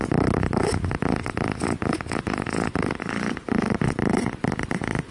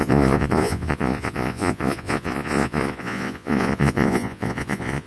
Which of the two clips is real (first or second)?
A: first